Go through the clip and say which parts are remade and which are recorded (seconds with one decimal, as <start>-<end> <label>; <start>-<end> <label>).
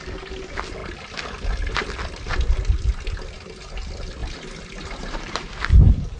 0.0-4.2 recorded; 4.2-5.8 remade; 5.8-6.2 recorded